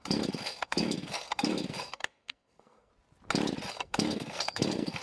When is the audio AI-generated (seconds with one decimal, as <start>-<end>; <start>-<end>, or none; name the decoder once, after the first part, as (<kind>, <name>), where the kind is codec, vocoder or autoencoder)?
0.0-2.9 (codec, SNAC); 3.7-5.0